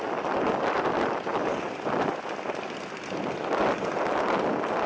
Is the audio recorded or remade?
recorded